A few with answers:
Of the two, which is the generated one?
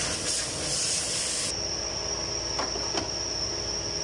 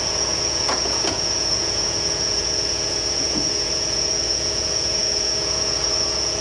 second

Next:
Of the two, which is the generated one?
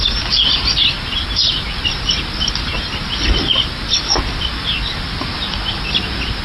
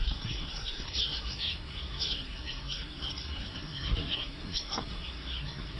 second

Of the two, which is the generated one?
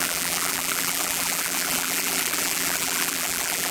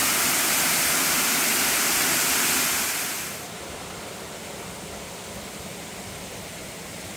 first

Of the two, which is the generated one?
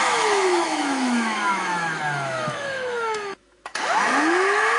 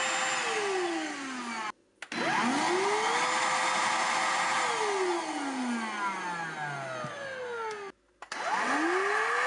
first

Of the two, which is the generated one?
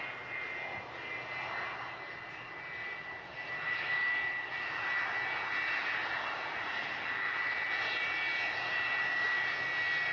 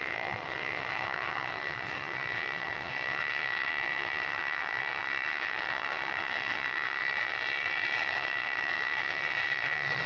second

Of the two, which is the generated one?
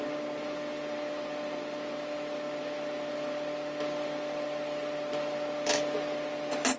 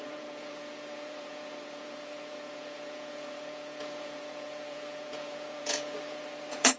second